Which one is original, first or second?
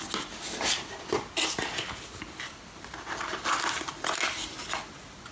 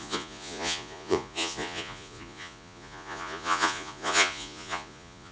first